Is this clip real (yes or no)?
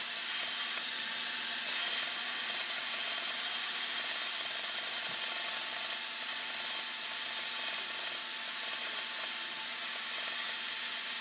yes